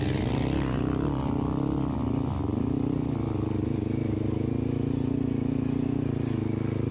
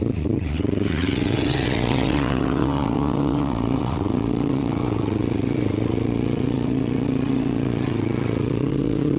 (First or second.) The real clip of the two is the first